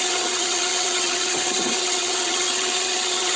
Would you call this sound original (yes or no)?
no